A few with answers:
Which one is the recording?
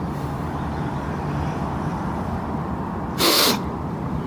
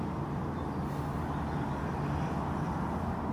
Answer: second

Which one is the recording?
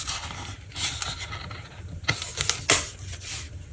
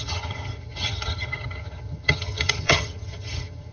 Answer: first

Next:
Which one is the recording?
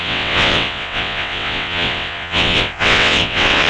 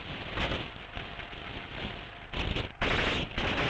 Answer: second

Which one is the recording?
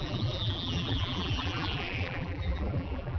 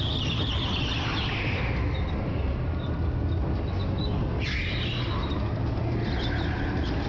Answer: second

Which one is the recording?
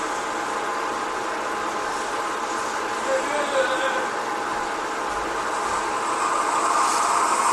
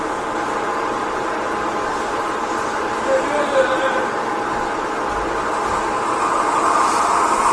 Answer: first